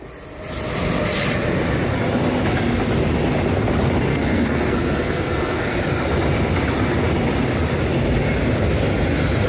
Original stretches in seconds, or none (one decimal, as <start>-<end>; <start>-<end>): 0.0-4.1; 5.8-9.5